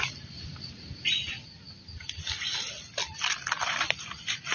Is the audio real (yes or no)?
yes